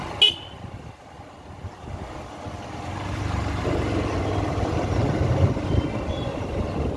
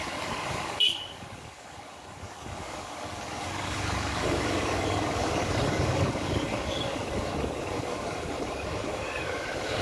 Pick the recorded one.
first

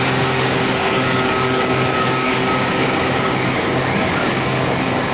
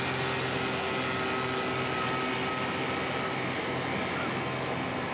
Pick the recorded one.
second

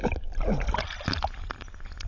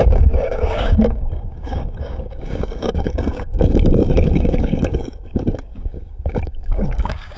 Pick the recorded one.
first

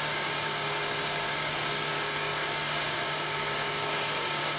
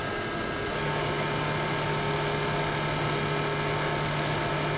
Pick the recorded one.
second